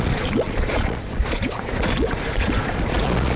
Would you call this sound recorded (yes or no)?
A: no